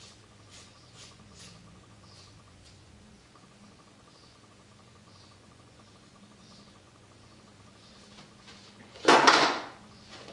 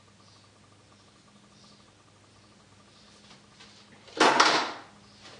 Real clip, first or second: second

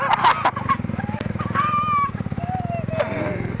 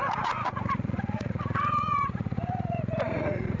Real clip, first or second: first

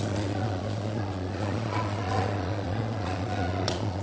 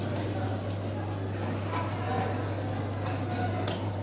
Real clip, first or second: second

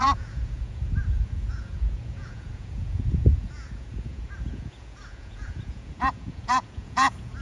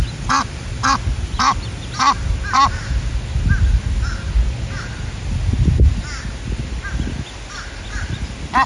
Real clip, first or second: second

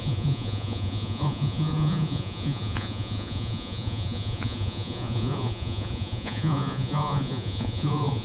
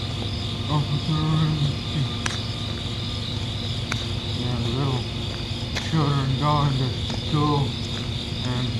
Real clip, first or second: second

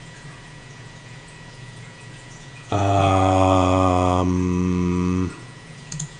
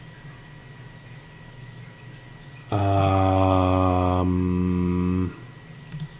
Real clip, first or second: second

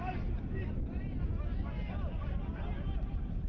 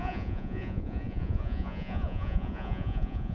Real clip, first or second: first